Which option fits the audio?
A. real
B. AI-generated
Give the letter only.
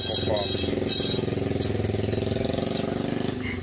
A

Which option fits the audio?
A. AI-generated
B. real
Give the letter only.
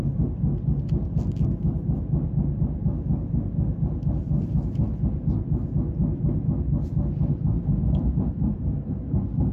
B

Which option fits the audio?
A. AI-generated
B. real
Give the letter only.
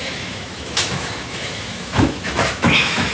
A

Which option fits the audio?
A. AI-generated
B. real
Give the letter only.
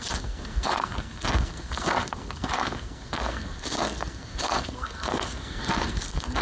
A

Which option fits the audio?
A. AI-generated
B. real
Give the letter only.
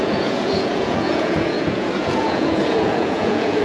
A